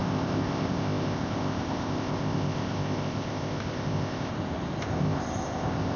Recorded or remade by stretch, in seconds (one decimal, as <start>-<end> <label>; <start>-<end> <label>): 0.0-4.3 remade; 4.3-4.8 recorded; 4.8-6.0 remade